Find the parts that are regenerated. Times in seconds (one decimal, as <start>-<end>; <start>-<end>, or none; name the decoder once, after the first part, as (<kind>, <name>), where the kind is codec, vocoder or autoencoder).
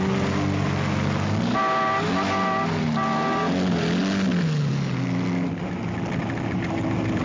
none